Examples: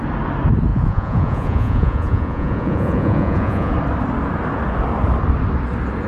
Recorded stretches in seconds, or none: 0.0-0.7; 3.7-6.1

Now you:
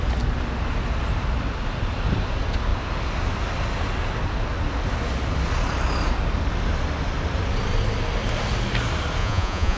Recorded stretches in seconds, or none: 0.0-9.2